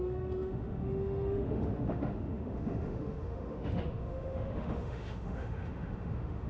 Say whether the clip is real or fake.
fake